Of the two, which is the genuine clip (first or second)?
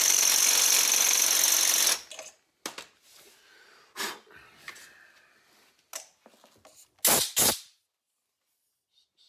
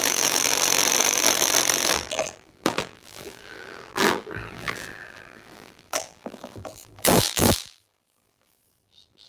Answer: first